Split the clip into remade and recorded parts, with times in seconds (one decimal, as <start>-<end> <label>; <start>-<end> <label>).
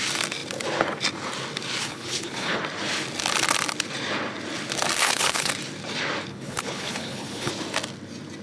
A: 0.0-1.8 recorded; 1.8-2.6 remade; 2.6-5.0 recorded; 5.0-5.5 remade; 5.5-6.3 recorded; 6.3-7.5 remade; 7.5-8.4 recorded